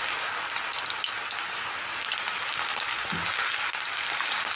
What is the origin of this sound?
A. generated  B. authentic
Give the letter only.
B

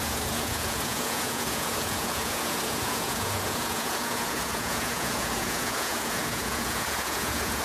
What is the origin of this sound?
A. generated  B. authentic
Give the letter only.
A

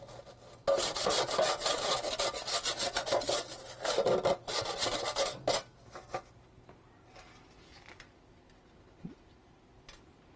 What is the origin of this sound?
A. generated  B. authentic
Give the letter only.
B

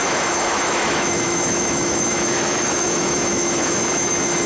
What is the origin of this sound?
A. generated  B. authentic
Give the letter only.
A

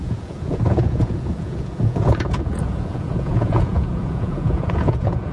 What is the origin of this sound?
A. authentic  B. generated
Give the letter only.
B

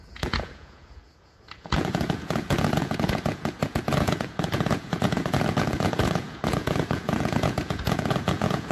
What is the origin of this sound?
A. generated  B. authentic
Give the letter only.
A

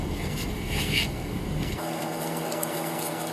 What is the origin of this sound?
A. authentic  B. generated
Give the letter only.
B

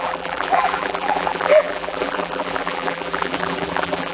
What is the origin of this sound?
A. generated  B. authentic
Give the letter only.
A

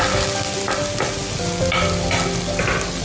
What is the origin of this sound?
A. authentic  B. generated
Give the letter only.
A